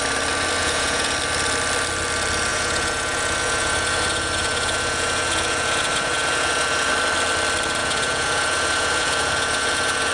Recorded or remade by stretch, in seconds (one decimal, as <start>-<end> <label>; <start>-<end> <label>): 0.0-0.6 recorded; 0.6-1.1 remade; 1.1-2.5 recorded; 2.5-6.9 remade; 6.9-7.8 recorded; 7.8-10.1 remade